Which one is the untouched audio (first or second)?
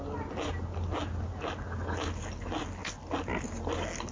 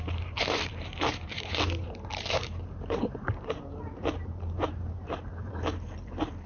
first